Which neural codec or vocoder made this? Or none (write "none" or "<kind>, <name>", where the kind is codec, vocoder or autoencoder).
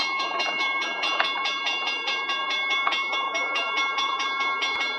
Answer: vocoder, BigVGAN v2